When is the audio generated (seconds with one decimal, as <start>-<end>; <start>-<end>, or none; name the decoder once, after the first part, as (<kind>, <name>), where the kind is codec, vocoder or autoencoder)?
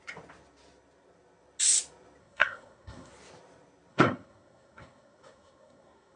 2.2-3.1 (codec, SNAC); 3.9-6.2